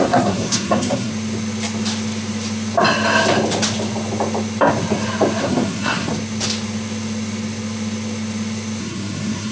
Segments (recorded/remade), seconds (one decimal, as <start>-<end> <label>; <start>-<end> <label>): 0.0-1.1 remade; 1.1-5.4 recorded; 5.4-6.1 remade; 6.1-8.8 recorded; 8.8-9.5 remade